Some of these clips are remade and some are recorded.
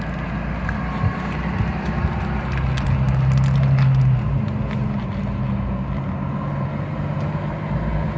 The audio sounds recorded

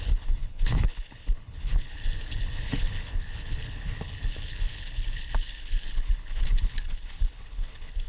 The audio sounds remade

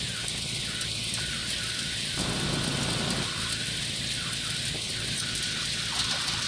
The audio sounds recorded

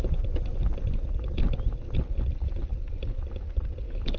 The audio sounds recorded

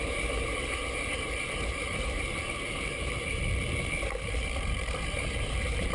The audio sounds remade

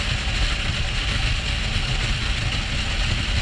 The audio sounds recorded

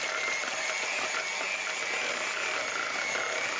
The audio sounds recorded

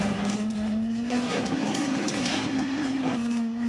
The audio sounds remade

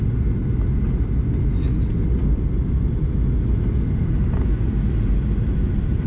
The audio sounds recorded